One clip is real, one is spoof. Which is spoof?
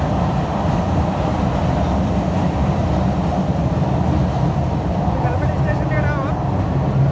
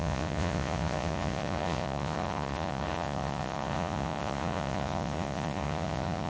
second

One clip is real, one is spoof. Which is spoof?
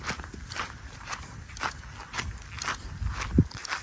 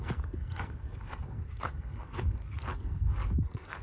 second